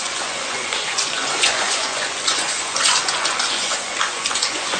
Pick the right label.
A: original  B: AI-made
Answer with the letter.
B